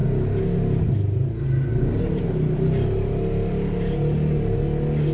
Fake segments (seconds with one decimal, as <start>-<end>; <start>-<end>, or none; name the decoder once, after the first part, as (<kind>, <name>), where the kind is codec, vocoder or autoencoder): none